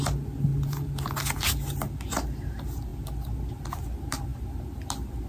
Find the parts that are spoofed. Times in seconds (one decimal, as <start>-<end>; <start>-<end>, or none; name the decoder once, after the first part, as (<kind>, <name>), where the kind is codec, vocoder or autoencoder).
0.5-1.1 (vocoder, Vocos)